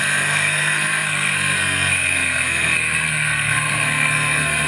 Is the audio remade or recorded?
remade